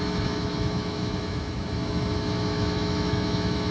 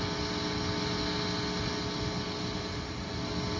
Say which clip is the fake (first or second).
first